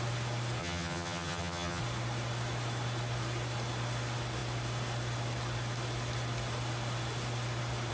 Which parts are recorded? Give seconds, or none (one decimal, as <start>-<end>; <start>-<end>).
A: 0.0-0.6; 1.8-7.9